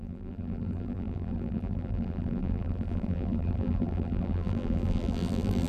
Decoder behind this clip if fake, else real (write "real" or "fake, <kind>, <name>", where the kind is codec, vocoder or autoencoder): fake, vocoder, BigVGAN v2